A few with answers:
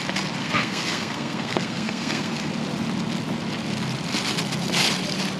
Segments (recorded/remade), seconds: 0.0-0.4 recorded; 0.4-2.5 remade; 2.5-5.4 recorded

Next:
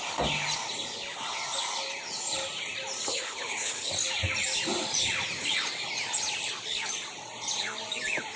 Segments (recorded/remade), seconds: 0.0-3.1 recorded; 3.1-3.9 remade; 3.9-8.4 recorded

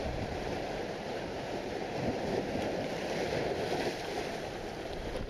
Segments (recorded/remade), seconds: 0.0-1.8 remade; 1.8-5.3 recorded

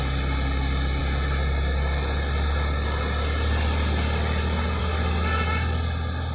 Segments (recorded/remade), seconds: 0.0-6.3 recorded

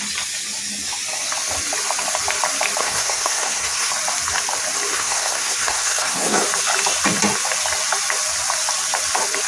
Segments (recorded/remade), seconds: 0.0-2.8 recorded; 2.8-3.9 remade; 3.9-4.9 recorded; 4.9-6.4 remade; 6.4-9.5 recorded

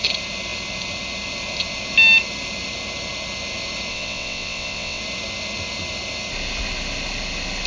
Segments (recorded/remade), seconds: 0.0-3.9 recorded; 3.9-5.0 remade; 5.0-7.7 recorded

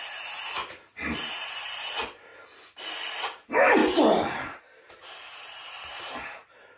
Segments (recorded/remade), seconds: 0.0-2.3 remade; 2.3-3.2 recorded; 3.2-3.8 remade; 3.8-4.6 recorded; 4.6-6.8 remade

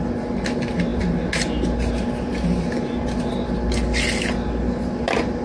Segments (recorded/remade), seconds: 0.0-5.4 recorded